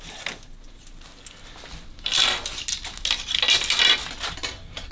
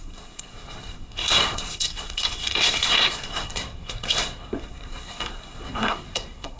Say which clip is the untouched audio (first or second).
first